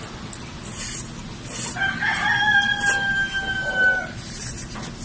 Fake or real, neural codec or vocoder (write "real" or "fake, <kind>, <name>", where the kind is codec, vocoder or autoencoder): real